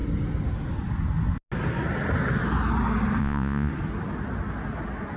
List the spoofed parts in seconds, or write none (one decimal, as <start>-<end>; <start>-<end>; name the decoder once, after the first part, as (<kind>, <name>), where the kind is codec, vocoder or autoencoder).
3.2-3.7 (vocoder, Vocos)